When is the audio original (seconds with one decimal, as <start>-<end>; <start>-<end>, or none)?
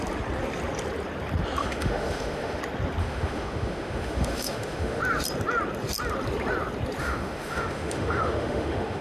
0.0-1.6; 2.6-3.0; 5.0-7.0